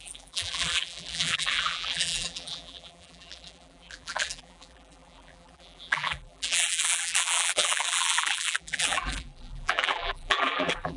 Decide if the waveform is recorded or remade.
remade